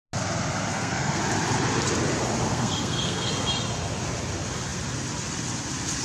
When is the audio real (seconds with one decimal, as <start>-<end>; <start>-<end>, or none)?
0.0-0.7; 1.2-2.5; 3.3-6.0